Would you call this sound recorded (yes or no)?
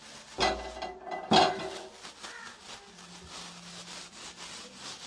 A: yes